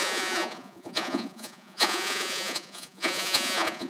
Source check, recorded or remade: remade